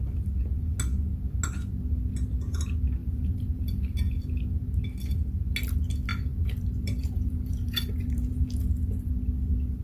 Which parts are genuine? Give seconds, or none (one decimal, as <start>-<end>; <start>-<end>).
0.0-3.0; 4.2-6.1; 9.1-9.8